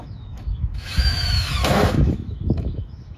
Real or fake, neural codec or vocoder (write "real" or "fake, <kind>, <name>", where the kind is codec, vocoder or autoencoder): fake, autoencoder, DAC-VAE